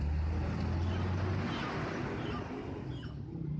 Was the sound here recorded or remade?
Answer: recorded